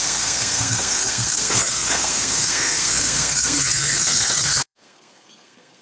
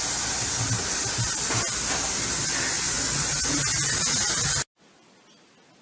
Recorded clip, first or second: second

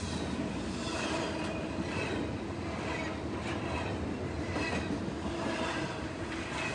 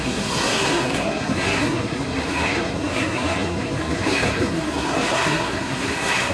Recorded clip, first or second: first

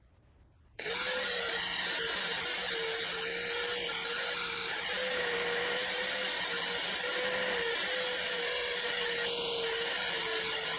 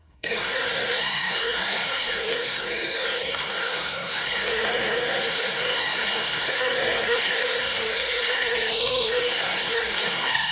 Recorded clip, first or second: first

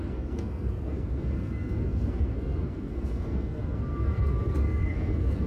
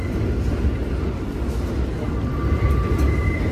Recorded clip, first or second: second